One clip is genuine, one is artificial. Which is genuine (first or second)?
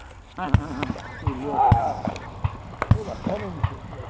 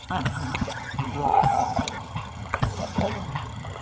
first